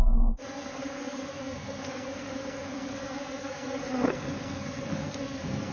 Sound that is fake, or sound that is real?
fake